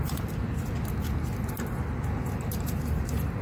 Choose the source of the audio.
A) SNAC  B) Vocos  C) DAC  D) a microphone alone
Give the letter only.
D